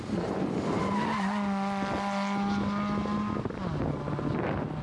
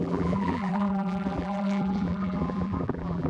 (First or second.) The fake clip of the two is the second